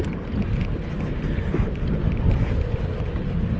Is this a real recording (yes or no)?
yes